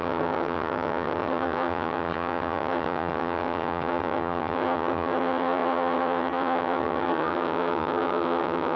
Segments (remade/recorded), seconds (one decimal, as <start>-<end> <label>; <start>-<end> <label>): 0.0-8.8 remade